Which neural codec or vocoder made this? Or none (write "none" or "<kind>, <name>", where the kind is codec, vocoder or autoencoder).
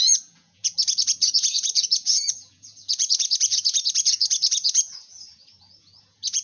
vocoder, Vocos